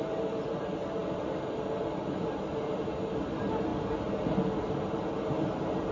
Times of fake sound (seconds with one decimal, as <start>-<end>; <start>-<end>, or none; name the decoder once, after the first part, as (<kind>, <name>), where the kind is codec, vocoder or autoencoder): none